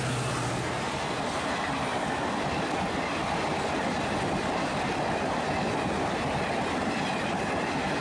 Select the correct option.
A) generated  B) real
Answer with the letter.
B